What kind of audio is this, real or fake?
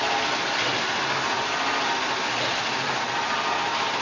real